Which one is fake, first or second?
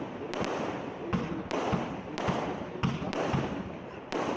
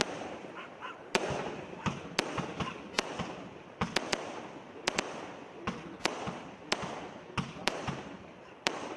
second